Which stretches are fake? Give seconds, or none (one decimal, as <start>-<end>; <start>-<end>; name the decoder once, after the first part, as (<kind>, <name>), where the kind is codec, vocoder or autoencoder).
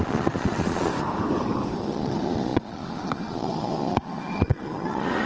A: 0.0-0.9 (vocoder, Vocos); 1.8-5.3